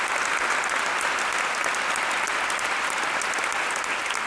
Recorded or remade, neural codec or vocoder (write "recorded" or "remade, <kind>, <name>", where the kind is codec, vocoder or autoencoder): recorded